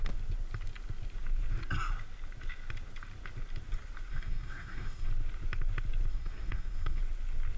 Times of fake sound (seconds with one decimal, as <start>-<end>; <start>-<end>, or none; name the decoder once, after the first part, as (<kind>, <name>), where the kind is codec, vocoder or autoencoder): 4.1-5.1 (codec, DAC); 6.1-7.0